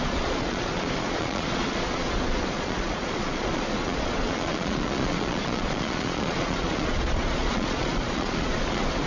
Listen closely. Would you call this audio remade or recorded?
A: remade